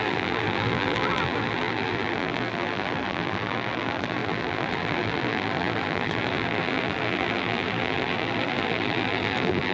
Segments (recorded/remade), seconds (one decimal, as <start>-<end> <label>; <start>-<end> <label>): 0.0-9.7 remade